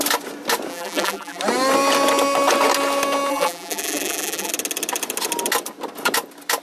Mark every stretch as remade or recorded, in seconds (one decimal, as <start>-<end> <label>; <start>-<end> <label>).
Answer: 0.0-0.7 recorded; 0.7-1.4 remade; 1.4-3.3 recorded; 3.3-4.5 remade; 4.5-6.6 recorded